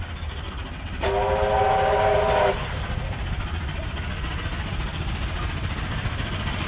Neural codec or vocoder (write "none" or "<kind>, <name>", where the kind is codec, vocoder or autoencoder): none